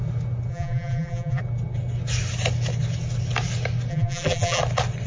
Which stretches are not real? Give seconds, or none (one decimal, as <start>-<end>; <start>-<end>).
0.5-1.4; 3.9-4.6